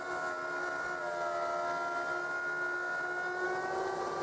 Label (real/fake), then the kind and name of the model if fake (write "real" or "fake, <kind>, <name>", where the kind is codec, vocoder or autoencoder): real